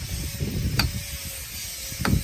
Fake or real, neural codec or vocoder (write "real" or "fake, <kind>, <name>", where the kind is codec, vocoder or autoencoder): real